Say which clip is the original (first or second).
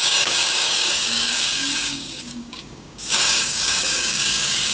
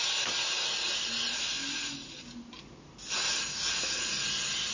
second